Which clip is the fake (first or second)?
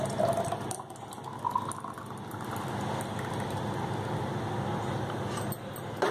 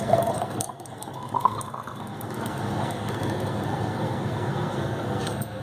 second